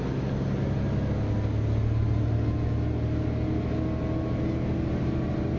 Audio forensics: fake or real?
real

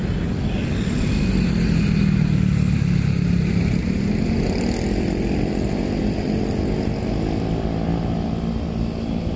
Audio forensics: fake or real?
real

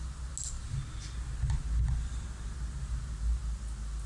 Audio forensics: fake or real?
real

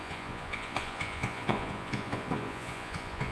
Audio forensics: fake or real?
fake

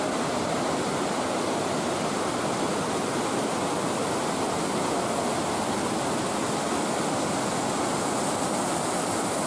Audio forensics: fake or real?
real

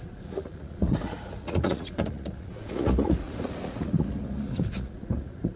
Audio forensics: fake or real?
fake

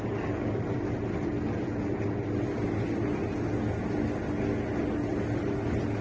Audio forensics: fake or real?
real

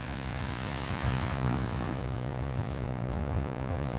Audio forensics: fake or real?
fake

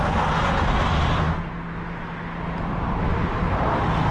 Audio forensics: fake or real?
real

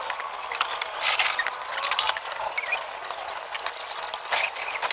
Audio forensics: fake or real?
real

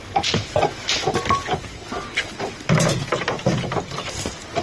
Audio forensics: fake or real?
real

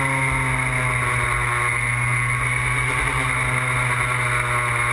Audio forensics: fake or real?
real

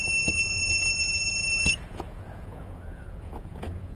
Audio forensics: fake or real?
fake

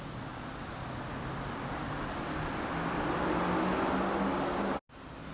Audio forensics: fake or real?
real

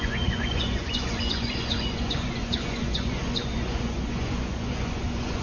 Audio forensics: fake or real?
fake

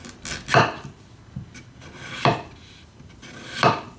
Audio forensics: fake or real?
real